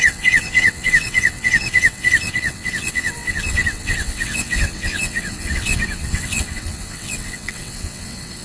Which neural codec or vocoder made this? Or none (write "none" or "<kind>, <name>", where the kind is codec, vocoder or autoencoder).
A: vocoder, WaveNeXt